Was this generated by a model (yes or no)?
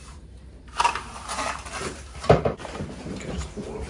yes